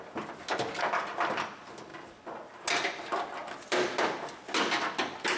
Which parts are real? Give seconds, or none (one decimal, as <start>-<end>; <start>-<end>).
0.0-5.4